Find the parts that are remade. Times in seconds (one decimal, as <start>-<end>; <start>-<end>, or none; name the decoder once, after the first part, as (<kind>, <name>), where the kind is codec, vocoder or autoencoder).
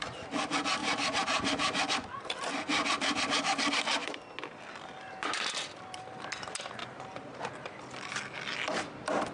0.8-1.9 (vocoder, BigVGAN v2); 6.8-7.4